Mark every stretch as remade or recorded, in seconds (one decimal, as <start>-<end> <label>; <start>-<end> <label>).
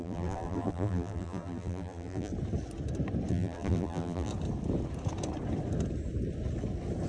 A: 0.0-2.3 remade; 2.3-3.3 recorded; 3.3-4.3 remade; 4.3-7.1 recorded